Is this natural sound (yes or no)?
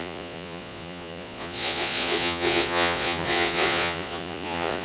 no